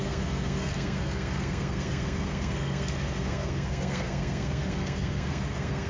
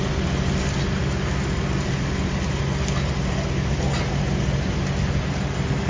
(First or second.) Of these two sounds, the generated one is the first